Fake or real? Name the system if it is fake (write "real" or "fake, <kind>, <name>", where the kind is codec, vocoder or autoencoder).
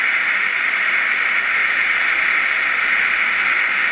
real